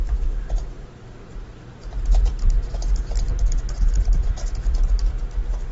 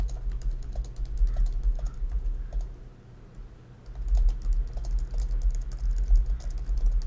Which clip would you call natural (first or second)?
second